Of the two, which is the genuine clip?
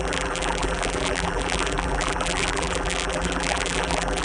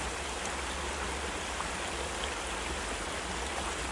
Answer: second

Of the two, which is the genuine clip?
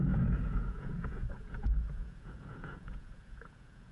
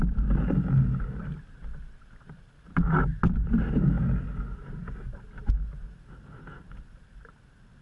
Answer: second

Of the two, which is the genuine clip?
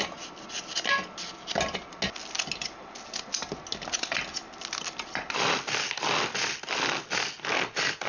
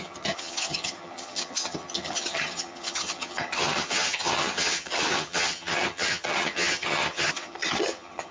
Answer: first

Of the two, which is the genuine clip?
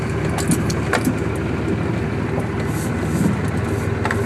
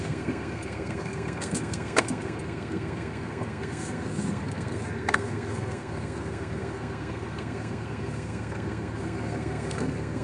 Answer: first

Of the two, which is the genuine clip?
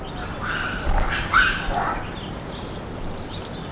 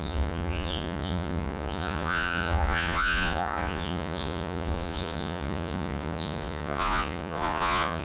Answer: first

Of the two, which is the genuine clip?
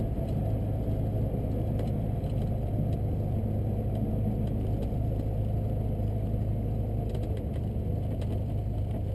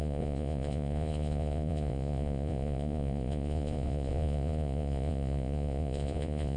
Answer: first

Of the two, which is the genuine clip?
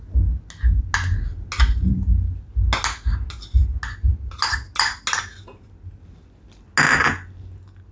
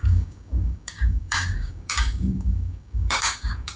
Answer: first